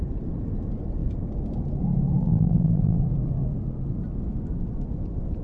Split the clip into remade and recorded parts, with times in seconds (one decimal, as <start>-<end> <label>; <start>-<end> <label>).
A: 0.0-2.2 recorded; 2.2-3.0 remade; 3.0-5.4 recorded